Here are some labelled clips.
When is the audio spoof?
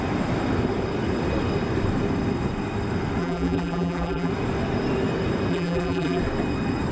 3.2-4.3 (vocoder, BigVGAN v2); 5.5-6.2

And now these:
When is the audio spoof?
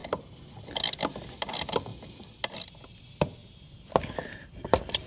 3.4-5.1 (vocoder, BigVGAN v2)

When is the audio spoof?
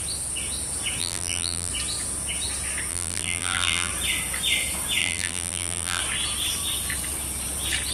1.0-1.7 (vocoder, BigVGAN v2); 2.9-3.9; 5.0-6.0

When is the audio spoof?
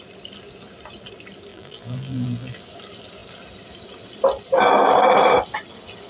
1.5-2.6 (vocoder, BigVGAN v2)